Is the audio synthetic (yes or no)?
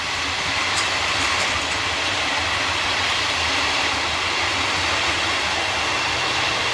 no